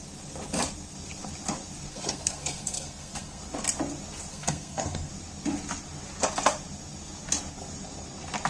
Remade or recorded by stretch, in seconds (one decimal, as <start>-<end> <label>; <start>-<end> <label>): 0.0-1.9 recorded; 1.9-3.4 remade; 3.4-4.3 recorded; 4.3-5.1 remade; 5.1-8.5 recorded